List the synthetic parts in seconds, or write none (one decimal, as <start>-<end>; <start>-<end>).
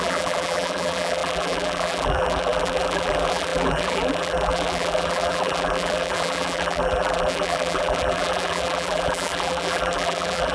0.0-10.5